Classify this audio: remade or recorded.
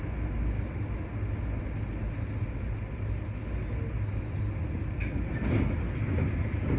recorded